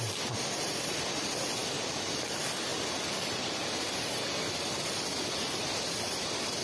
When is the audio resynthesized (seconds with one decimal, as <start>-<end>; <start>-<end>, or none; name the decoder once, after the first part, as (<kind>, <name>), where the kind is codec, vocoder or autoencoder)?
none

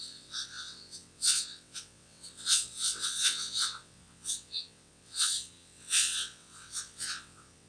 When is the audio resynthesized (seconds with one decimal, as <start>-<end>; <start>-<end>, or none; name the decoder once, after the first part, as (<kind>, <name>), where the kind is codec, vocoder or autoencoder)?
0.0-7.7 (vocoder, WaveNeXt)

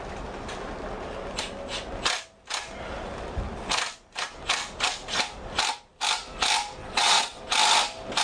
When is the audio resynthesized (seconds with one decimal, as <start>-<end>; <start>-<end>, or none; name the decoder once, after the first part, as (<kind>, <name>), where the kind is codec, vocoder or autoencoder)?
6.8-7.4 (vocoder, WaveNeXt)

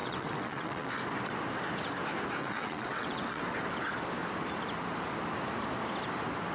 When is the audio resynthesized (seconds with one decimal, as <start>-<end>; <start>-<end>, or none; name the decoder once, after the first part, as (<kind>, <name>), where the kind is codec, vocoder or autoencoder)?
0.0-0.9 (vocoder, WaveNeXt); 2.4-3.4